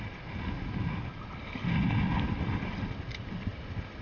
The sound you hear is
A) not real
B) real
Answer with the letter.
B